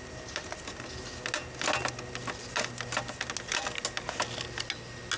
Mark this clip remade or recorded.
recorded